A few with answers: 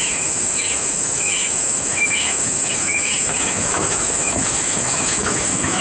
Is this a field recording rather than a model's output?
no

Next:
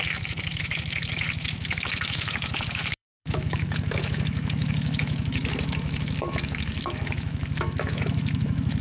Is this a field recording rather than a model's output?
no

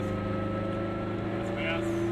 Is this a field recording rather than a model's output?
yes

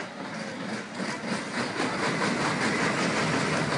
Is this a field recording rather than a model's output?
yes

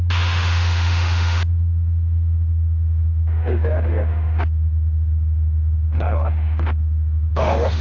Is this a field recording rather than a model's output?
no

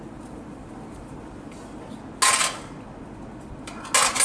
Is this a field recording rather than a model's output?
yes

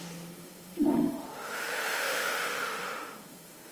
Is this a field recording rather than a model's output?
no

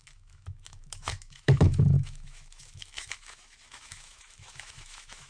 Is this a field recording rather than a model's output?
no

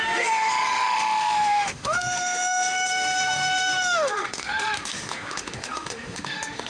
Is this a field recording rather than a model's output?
no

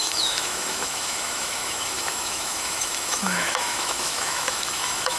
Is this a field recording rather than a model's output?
no